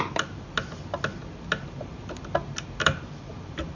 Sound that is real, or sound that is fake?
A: real